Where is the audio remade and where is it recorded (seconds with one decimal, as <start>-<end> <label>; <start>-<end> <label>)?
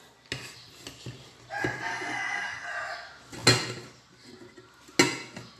0.0-1.9 recorded; 1.9-2.7 remade; 2.7-5.6 recorded